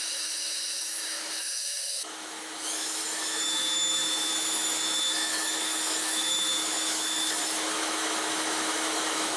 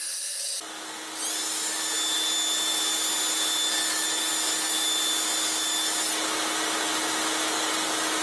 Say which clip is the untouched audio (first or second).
second